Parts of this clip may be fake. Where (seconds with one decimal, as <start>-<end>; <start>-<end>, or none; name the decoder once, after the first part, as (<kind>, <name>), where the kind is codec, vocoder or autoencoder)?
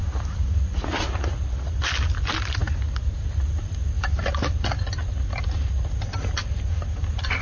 none